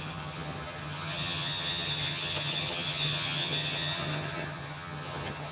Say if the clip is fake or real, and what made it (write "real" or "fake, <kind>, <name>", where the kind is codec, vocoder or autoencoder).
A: fake, vocoder, HiFi-GAN